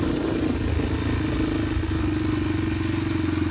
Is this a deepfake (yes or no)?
no